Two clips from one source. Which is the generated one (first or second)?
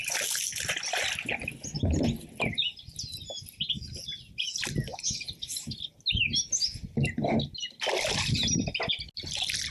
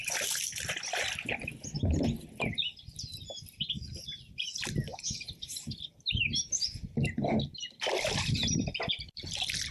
second